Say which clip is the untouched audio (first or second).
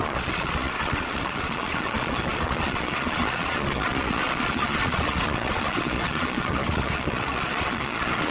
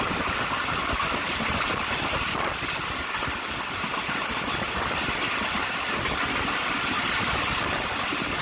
second